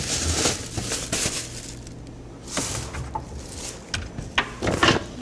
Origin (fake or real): real